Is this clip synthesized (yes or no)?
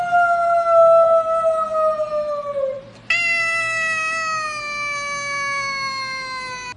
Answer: no